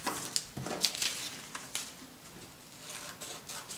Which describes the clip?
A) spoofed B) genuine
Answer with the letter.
B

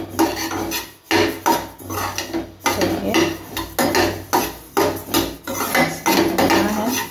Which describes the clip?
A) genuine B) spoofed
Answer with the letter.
A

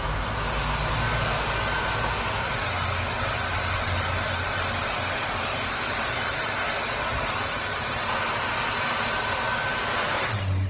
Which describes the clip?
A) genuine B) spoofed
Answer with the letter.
A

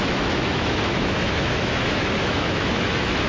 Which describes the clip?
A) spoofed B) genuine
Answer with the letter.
A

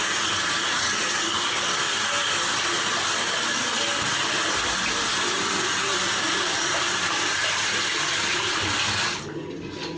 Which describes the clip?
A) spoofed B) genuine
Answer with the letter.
B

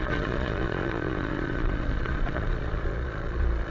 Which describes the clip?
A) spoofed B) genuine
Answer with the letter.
A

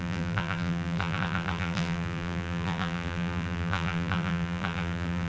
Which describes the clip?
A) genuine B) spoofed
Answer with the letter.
B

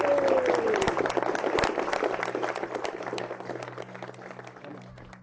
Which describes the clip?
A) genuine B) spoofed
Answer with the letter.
A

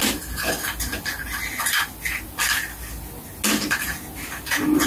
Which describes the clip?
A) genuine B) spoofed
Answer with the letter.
A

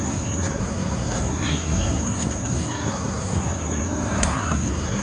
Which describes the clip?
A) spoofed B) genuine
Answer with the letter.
A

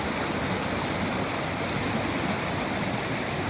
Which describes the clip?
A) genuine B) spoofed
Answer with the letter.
A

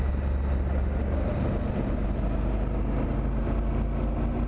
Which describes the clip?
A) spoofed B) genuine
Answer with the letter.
B